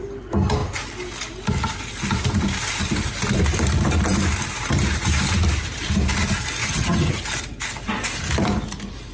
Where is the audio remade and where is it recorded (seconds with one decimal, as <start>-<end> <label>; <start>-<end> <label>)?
0.0-6.6 recorded; 6.6-7.2 remade; 7.2-9.1 recorded

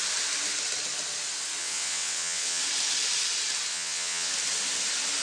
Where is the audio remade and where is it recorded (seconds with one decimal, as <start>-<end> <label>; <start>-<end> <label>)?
0.0-1.6 recorded; 1.6-2.6 remade; 2.6-3.7 recorded; 3.7-4.3 remade; 4.3-5.2 recorded

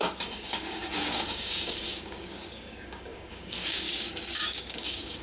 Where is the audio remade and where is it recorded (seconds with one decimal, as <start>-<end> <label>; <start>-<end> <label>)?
0.0-5.2 remade

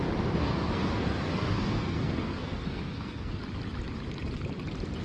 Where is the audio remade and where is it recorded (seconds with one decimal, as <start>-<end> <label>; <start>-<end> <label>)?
0.0-0.4 recorded; 0.4-3.4 remade; 3.4-5.0 recorded

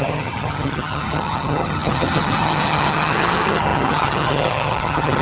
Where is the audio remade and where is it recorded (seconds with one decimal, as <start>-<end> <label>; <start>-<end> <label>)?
0.0-5.2 remade

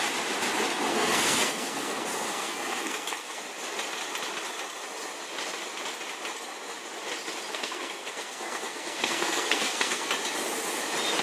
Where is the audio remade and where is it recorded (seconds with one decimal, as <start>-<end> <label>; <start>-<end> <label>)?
0.0-0.9 recorded; 0.9-3.4 remade; 3.4-7.5 recorded; 7.5-10.1 remade; 10.1-11.2 recorded

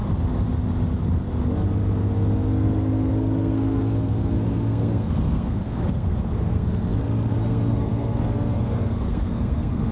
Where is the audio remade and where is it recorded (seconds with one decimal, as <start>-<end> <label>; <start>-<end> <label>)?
0.0-2.5 recorded; 2.5-9.9 remade